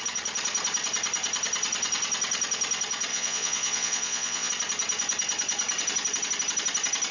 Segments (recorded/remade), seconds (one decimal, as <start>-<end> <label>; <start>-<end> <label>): 0.0-3.1 recorded; 3.1-4.5 remade; 4.5-7.1 recorded